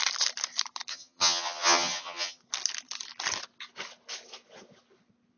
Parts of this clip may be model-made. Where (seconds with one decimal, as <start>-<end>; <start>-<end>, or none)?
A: 0.9-2.4